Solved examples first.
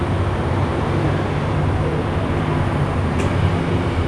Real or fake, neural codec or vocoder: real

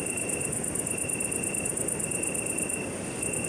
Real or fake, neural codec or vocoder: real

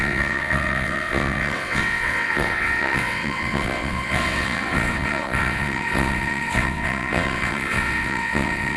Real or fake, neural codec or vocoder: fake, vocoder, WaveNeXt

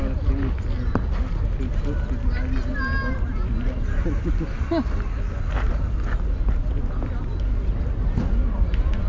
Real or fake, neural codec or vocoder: real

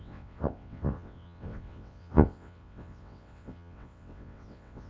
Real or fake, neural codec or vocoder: fake, vocoder, WaveNeXt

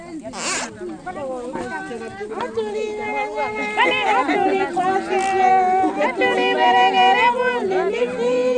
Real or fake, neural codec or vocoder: real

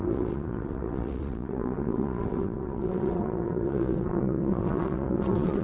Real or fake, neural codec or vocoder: fake, vocoder, WaveNeXt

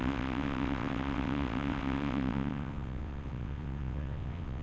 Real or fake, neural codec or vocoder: fake, vocoder, WaveNeXt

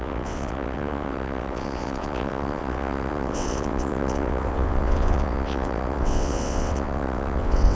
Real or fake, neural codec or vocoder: fake, vocoder, WaveNeXt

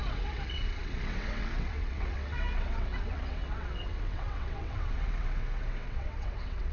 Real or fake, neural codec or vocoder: fake, vocoder, WaveNeXt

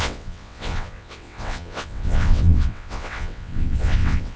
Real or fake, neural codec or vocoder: fake, vocoder, WaveNeXt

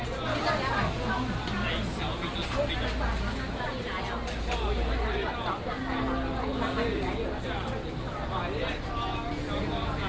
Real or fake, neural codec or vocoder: real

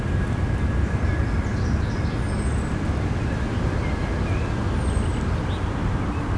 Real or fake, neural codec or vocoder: real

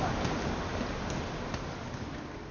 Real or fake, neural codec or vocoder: real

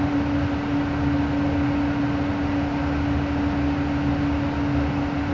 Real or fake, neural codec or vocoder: real